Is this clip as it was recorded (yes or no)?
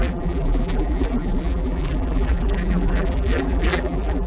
no